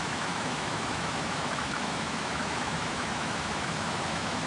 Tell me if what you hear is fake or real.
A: fake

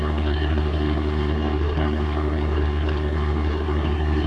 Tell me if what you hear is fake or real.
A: fake